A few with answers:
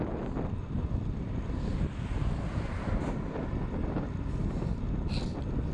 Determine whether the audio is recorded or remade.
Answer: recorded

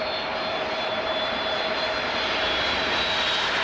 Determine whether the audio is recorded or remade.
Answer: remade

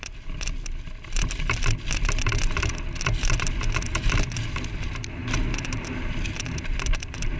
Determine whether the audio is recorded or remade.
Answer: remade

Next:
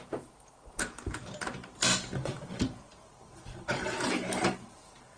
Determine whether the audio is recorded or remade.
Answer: remade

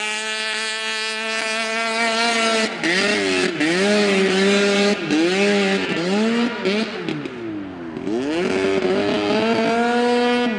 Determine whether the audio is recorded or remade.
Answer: recorded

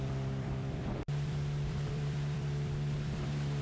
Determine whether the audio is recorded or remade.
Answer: remade